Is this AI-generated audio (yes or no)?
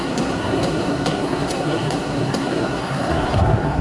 yes